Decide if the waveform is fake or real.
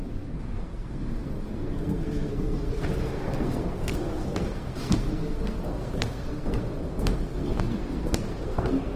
fake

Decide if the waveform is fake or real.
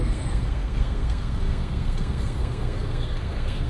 fake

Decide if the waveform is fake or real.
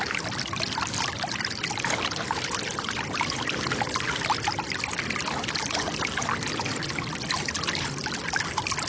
real